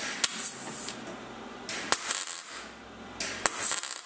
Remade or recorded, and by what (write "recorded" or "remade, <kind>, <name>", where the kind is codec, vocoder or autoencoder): recorded